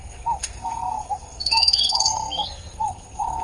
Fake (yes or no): yes